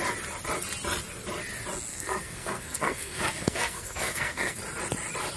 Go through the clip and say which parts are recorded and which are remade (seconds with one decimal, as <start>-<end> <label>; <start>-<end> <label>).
0.0-1.9 recorded; 1.9-4.6 remade; 4.6-5.4 recorded